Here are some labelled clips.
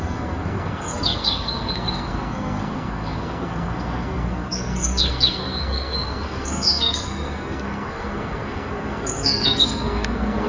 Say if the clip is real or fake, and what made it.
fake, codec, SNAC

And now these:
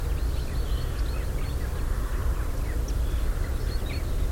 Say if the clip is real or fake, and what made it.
real